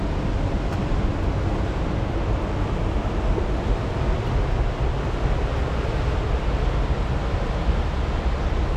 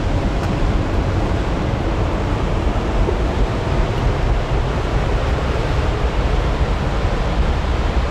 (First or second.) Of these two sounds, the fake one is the second